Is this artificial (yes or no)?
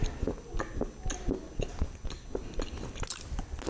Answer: no